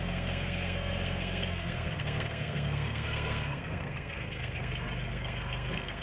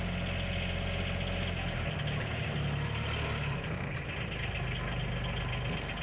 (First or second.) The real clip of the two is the second